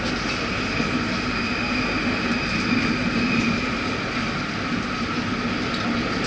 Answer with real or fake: real